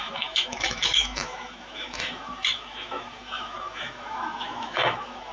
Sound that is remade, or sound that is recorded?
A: remade